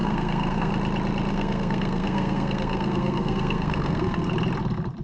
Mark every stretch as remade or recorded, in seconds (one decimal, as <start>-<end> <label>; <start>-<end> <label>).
0.0-0.7 remade; 0.7-1.3 recorded; 1.3-4.3 remade; 4.3-5.0 recorded